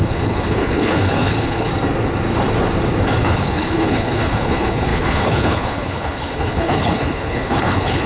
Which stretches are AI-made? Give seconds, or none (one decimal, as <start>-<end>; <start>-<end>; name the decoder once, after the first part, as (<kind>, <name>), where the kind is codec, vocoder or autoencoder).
0.0-1.7 (codec, HILCodec); 3.2-8.1